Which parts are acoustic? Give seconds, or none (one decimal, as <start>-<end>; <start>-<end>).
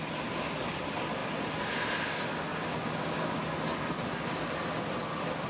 0.0-2.5; 3.4-5.5